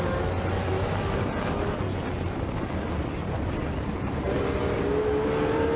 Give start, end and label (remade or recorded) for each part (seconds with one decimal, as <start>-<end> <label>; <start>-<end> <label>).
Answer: 0.0-3.2 recorded; 3.2-4.2 remade; 4.2-5.8 recorded